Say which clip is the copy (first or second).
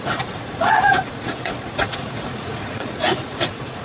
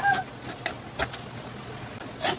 first